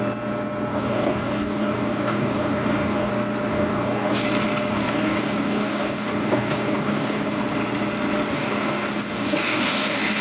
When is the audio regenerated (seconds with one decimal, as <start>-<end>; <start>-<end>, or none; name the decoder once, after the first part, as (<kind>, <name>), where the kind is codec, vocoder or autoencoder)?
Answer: 0.7-3.1 (codec, DAC); 3.5-4.2; 4.7-7.4; 8.3-10.2